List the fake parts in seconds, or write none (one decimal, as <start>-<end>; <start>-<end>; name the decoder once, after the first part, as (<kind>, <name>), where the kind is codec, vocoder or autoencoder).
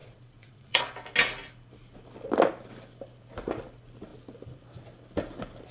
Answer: 0.0-0.8 (vocoder, Vocos)